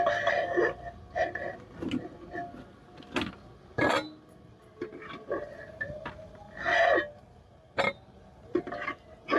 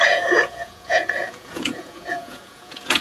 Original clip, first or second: first